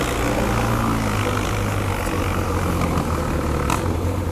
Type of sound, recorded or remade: recorded